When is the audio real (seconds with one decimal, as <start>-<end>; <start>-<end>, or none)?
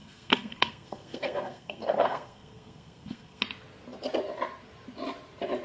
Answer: 3.4-5.6